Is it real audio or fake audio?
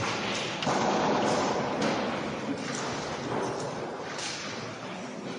real